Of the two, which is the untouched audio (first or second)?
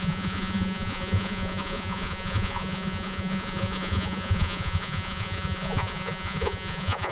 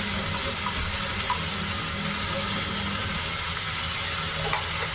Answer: second